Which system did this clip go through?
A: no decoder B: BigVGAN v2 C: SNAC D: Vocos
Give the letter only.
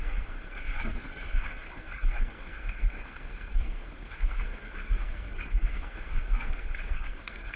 C